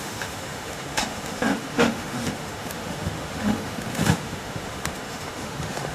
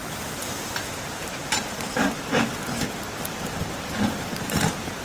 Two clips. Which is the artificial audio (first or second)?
first